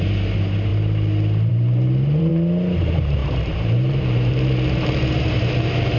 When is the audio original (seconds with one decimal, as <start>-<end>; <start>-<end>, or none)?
0.7-1.5; 2.3-2.8